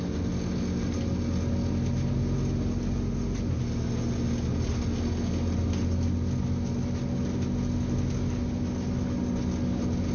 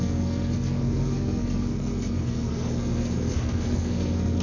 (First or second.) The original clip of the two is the first